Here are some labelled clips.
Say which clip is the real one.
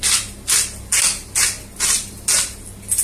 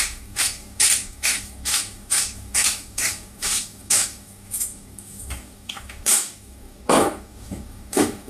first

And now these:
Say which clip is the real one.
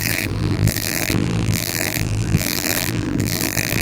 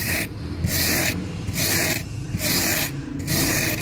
second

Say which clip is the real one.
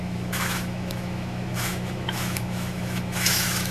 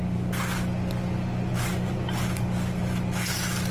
second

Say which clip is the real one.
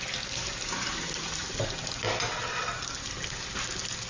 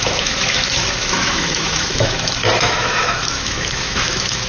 first